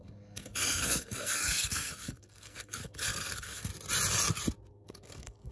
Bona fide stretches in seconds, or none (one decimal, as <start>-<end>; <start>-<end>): 3.7-4.7